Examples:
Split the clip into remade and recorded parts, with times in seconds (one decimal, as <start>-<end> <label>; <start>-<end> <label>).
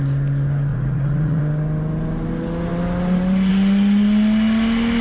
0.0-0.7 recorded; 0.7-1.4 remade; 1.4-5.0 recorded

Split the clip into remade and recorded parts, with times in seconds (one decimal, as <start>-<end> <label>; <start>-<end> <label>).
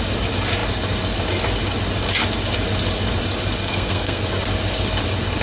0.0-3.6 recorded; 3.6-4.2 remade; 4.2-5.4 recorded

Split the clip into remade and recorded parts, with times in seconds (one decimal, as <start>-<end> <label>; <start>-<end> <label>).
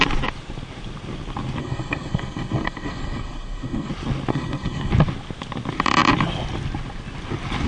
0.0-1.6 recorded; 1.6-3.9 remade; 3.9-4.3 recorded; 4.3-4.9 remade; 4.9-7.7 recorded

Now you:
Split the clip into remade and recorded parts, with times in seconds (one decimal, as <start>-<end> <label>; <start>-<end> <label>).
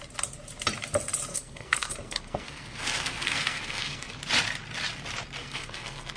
0.0-1.3 recorded; 1.3-4.2 remade; 4.2-5.4 recorded; 5.4-6.2 remade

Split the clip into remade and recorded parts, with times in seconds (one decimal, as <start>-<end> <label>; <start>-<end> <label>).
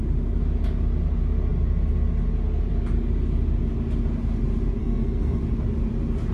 0.0-4.8 recorded; 4.8-5.4 remade; 5.4-6.3 recorded